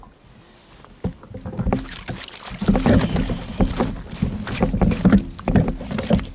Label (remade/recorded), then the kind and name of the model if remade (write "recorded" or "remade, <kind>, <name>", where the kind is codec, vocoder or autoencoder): recorded